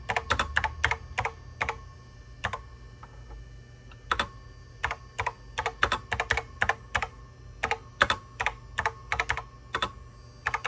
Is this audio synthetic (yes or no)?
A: no